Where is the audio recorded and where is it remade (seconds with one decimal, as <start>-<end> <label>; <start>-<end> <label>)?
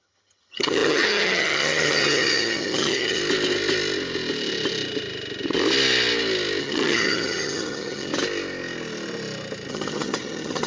0.0-3.2 remade; 3.2-6.6 recorded; 6.6-8.1 remade; 8.1-9.7 recorded; 9.7-10.7 remade